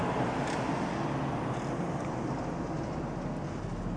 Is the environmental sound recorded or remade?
recorded